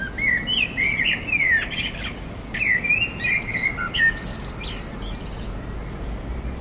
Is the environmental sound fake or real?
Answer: real